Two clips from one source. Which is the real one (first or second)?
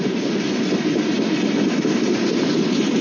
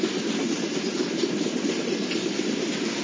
first